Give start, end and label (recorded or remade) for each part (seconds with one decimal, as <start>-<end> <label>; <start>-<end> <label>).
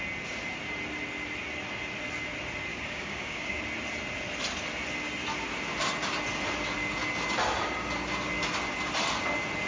0.0-2.7 recorded; 2.7-3.6 remade; 3.6-9.7 recorded